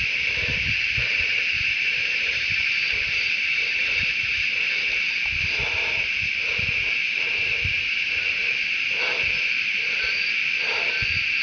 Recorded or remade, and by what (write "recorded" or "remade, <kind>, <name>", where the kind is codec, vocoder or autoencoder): remade, vocoder, BigVGAN v2